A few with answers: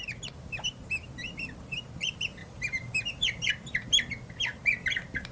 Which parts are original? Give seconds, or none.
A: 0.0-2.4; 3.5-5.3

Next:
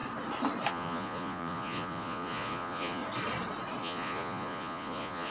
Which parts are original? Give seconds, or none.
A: 0.0-0.7; 3.0-3.8

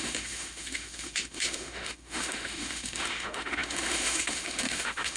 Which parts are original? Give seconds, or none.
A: none

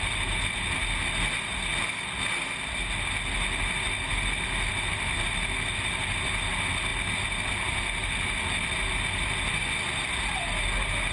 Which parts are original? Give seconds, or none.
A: 0.0-11.1

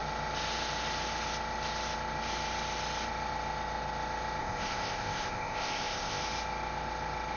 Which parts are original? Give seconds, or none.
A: 0.0-4.4; 6.2-7.4

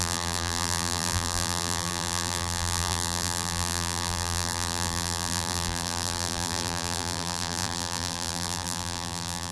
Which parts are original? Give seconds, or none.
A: none